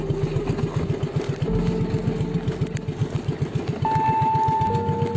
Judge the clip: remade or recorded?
recorded